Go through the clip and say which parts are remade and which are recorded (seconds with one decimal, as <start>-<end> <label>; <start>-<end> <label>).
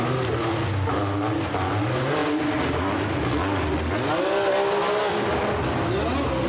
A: 0.0-6.5 recorded